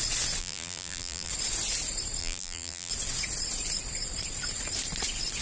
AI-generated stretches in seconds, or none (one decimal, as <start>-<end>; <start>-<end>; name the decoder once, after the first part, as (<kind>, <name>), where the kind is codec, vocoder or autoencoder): 0.4-1.3 (vocoder, BigVGAN v2); 2.2-2.9